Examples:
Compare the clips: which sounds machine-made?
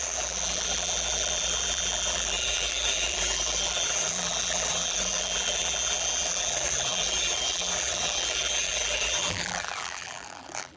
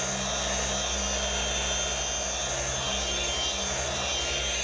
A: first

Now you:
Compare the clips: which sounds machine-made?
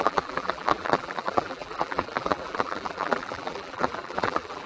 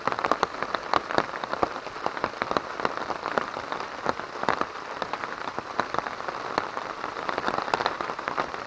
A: first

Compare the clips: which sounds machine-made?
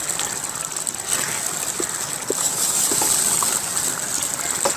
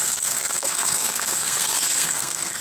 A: second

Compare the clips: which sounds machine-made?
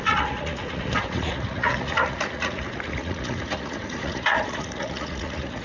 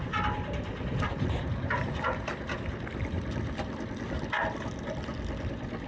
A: first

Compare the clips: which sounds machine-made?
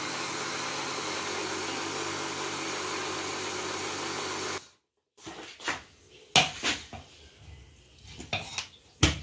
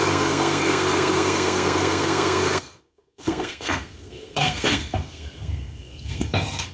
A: second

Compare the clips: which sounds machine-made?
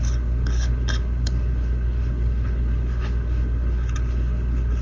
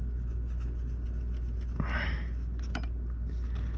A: first